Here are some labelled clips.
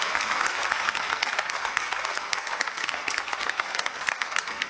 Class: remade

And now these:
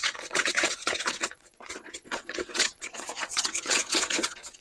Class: remade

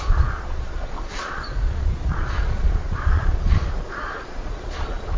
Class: remade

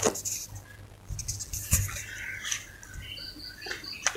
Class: recorded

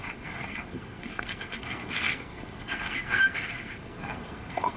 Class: remade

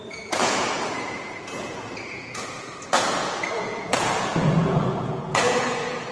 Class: remade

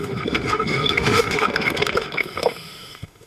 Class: remade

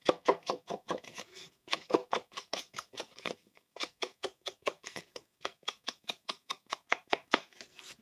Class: remade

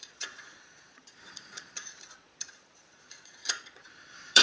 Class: remade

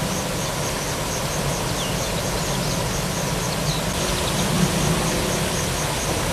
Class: recorded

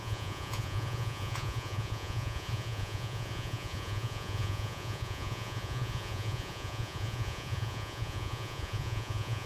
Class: remade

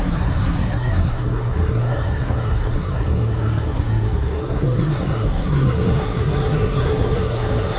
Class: remade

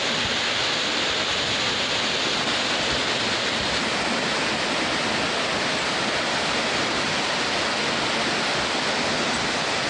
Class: recorded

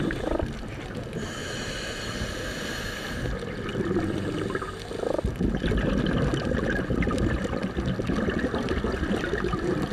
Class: recorded